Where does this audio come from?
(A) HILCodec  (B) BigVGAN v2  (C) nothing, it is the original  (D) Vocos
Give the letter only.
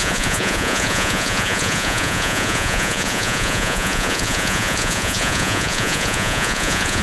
D